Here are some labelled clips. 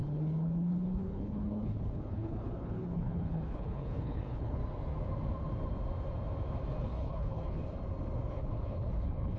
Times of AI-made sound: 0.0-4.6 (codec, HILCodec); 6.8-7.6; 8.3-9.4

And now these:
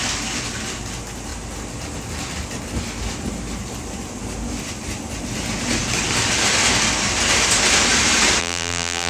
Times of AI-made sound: 8.4-9.1 (vocoder, BigVGAN v2)

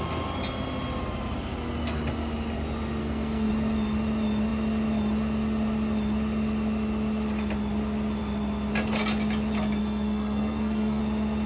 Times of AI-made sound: 3.0-3.5 (codec, SNAC); 9.8-11.0